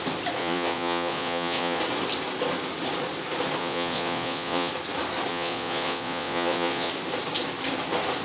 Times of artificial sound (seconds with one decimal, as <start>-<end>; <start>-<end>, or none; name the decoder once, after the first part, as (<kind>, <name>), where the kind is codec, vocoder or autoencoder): 0.4-1.8 (vocoder, Vocos); 3.6-4.7; 5.3-6.9